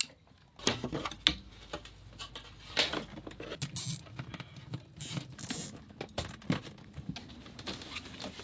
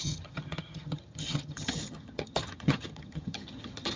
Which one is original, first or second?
first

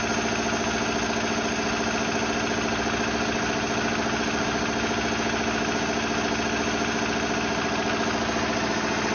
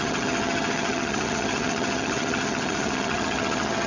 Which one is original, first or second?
first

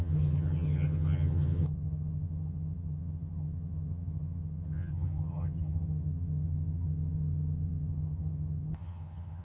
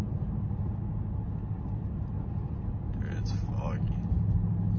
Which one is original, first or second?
second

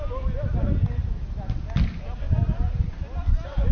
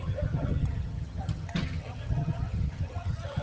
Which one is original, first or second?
first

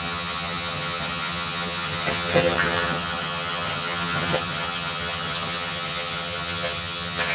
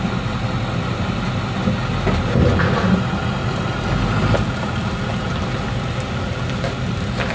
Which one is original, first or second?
second